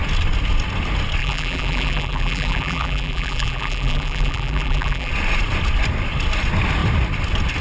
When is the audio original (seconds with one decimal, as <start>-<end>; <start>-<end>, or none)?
0.0-1.2; 5.1-7.6